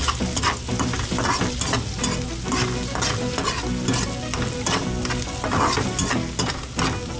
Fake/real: real